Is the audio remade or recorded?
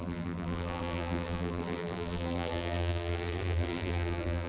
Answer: remade